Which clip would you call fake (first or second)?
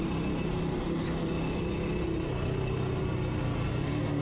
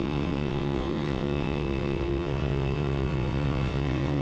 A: second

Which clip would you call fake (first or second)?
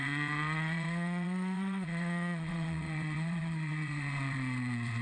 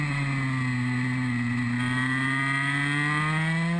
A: first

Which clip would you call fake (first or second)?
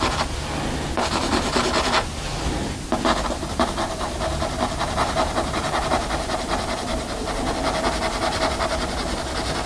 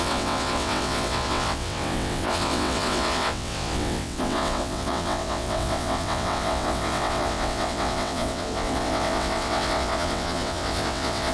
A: second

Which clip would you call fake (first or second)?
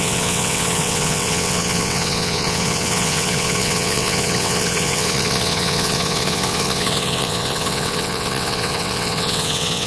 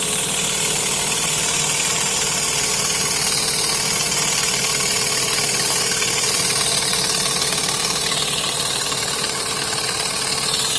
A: first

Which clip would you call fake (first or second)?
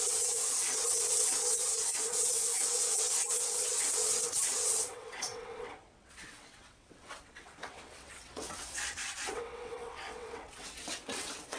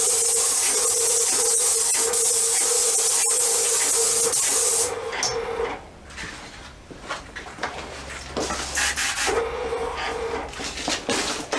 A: first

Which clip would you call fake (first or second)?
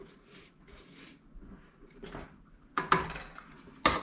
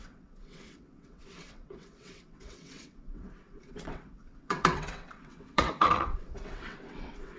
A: second